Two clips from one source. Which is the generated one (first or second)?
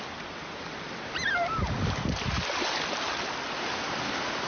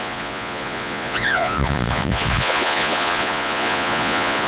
second